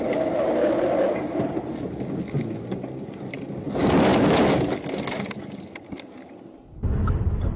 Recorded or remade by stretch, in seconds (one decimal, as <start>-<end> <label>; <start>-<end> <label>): 0.0-7.6 recorded